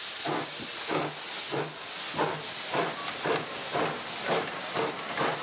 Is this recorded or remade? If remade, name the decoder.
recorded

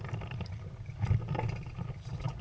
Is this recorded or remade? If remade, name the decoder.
recorded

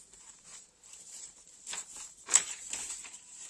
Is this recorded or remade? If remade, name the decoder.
remade, vocoder, BigVGAN v2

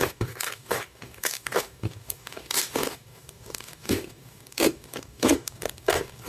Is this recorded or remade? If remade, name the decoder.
remade, codec, DAC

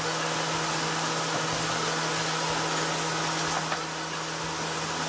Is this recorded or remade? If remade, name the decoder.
recorded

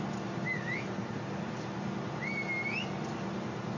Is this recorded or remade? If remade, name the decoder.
recorded